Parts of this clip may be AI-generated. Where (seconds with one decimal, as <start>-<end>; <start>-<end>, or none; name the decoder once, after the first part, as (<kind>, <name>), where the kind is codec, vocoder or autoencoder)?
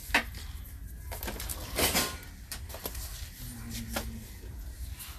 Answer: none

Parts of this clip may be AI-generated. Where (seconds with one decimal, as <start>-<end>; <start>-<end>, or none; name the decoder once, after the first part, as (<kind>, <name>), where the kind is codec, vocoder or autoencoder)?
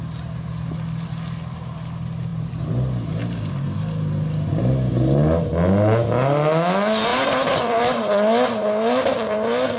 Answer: none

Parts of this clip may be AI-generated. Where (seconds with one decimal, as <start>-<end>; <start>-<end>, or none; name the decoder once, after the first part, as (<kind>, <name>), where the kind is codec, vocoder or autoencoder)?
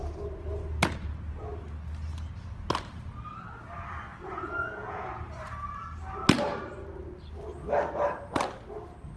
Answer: 4.1-5.1 (vocoder, Vocos)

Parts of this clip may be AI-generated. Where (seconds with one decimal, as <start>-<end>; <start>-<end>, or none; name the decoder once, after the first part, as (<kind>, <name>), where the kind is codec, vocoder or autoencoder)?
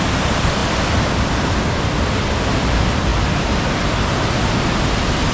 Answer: 0.0-3.1 (vocoder, BigVGAN v2)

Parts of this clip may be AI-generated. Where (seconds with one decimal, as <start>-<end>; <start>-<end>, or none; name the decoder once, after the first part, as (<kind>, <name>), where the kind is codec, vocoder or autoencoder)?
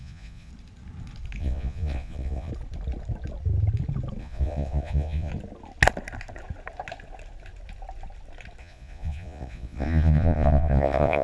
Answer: 0.0-0.5 (vocoder, Vocos); 1.4-2.5; 4.2-5.3; 8.6-11.2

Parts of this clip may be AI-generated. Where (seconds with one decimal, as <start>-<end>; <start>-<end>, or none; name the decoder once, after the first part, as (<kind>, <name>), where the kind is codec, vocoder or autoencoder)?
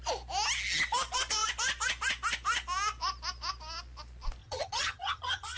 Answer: 4.4-5.6 (vocoder, HiFi-GAN)